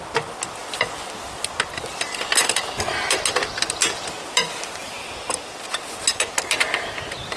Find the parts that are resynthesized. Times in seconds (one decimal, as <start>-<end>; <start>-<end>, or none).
none